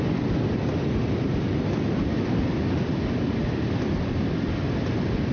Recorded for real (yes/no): yes